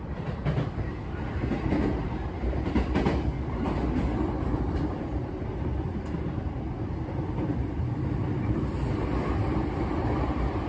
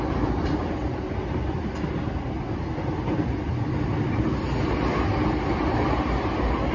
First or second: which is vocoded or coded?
first